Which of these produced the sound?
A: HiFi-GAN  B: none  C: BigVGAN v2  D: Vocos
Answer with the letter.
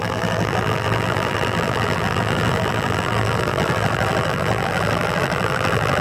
C